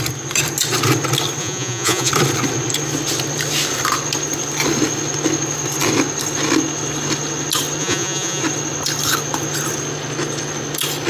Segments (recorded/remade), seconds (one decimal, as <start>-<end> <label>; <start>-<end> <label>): 0.0-1.4 recorded; 1.4-2.1 remade; 2.1-7.8 recorded; 7.8-8.4 remade; 8.4-11.1 recorded